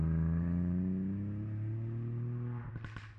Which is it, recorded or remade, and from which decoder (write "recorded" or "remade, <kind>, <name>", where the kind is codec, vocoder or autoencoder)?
recorded